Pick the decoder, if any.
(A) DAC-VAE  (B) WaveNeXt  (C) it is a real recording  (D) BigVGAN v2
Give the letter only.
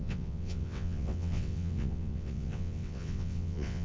B